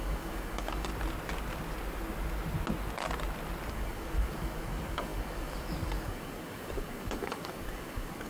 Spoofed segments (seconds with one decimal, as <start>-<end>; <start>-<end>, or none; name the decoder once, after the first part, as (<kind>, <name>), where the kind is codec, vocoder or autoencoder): 0.0-0.9 (codec, DAC); 3.7-8.3